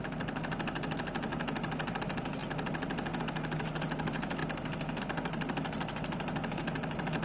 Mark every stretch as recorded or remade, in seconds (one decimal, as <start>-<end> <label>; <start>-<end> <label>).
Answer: 0.0-7.2 recorded